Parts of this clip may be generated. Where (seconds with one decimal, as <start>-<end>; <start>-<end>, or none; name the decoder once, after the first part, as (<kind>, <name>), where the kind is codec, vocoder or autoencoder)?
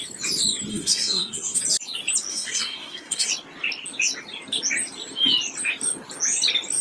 0.7-1.6 (codec, SNAC); 2.3-3.3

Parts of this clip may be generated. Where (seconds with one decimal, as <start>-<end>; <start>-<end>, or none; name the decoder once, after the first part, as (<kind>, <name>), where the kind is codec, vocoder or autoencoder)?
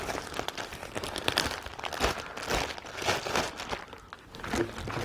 none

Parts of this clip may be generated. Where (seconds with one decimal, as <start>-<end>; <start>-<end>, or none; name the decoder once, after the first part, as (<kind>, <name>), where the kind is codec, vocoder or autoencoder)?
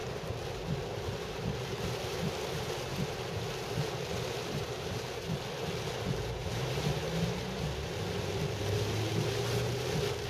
6.4-7.0 (vocoder, BigVGAN v2)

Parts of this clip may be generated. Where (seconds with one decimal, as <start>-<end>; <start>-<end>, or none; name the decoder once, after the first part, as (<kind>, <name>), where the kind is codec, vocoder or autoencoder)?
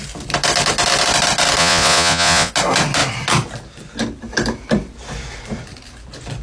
1.6-2.5 (vocoder, Vocos)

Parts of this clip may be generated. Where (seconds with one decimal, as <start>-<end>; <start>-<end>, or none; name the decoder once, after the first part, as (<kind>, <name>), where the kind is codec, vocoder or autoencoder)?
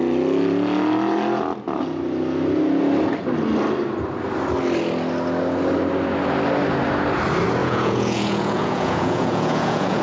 7.6-10.0 (vocoder, Vocos)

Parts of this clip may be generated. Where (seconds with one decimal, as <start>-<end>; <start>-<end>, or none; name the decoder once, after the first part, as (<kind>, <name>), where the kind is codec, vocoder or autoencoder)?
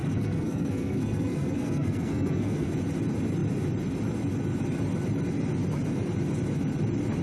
0.0-2.7 (codec, SNAC)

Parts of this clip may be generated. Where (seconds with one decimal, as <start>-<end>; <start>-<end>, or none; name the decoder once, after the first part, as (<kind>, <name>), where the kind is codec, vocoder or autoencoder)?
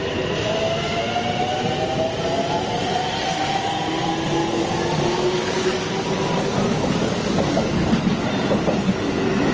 4.4-8.0 (codec, DAC)